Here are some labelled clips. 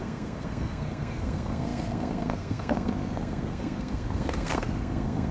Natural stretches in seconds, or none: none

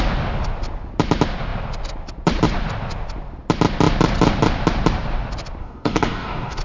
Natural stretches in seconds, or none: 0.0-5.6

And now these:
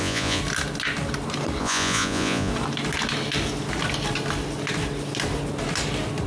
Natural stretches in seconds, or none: 0.4-1.6; 2.5-6.3

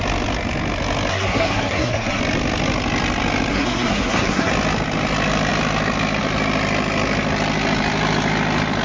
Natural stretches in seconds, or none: 0.0-1.1; 2.2-3.5; 4.5-8.8

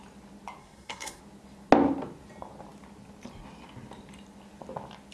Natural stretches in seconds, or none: 0.0-0.6; 1.2-5.1

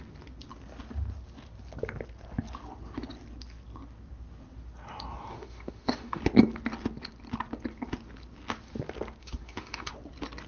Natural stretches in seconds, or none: 0.0-5.3; 6.2-9.2; 9.9-10.5